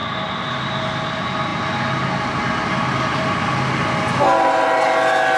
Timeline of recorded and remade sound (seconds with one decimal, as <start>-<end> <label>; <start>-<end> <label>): 0.0-5.4 recorded